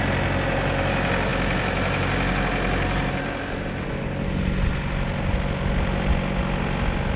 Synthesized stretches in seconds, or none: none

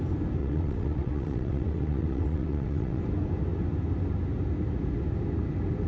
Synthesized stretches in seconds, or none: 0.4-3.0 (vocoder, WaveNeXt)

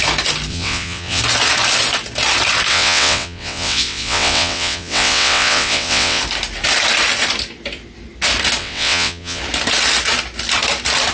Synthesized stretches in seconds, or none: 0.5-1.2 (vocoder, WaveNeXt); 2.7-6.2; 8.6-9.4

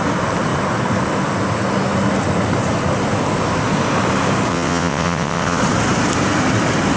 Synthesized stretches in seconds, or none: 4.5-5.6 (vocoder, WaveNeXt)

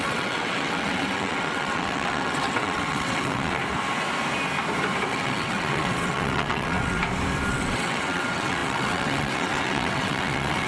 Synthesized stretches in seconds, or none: 0.0-3.6 (vocoder, WaveNeXt); 5.1-7.0; 7.5-10.7